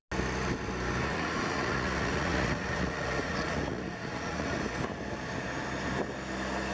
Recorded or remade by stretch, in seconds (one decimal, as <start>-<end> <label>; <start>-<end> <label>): 0.0-1.0 recorded; 1.0-4.6 remade; 4.6-6.7 recorded